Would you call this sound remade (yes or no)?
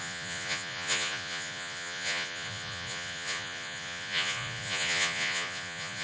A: yes